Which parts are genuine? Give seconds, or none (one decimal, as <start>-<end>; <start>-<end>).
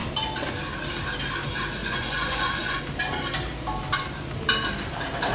0.0-1.8; 2.8-5.3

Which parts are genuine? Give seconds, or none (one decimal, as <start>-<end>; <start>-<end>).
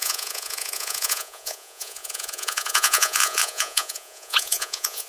none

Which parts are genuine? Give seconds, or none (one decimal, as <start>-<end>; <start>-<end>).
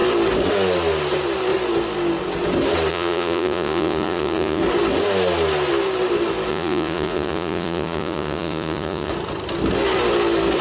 0.0-2.9; 4.6-6.5; 9.1-10.6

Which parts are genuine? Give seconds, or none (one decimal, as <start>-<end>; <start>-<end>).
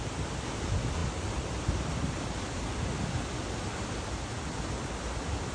0.0-5.5